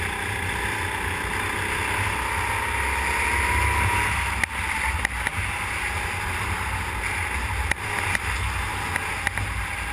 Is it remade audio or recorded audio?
recorded